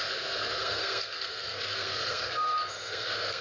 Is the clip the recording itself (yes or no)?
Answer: no